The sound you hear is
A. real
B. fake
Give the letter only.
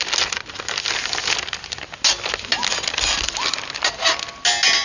A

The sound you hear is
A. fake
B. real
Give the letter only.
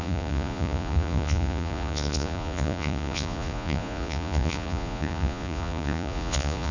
A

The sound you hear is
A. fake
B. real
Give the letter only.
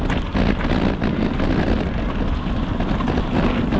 B